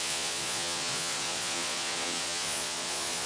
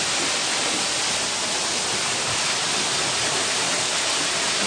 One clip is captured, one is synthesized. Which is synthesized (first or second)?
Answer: first